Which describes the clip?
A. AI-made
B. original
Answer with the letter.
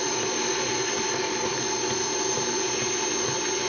B